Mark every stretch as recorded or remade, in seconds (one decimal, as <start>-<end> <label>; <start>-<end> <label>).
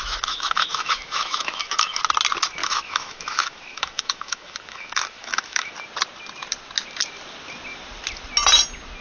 0.0-2.0 remade; 2.0-2.6 recorded; 2.6-5.7 remade; 5.7-9.0 recorded